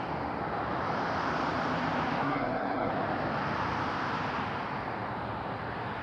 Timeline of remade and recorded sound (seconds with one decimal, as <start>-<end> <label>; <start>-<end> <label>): 0.0-2.2 recorded; 2.2-2.9 remade; 2.9-6.0 recorded